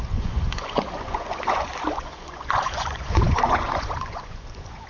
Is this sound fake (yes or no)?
yes